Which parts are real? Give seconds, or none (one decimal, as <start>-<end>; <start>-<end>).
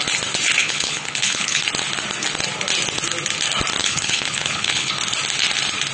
0.0-0.6; 1.6-3.8; 4.9-5.9